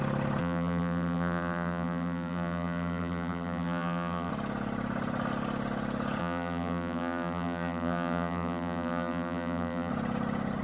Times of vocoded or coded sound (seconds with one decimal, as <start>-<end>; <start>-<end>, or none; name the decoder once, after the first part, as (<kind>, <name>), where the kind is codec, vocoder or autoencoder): 0.4-4.3 (vocoder, BigVGAN v2); 6.2-9.9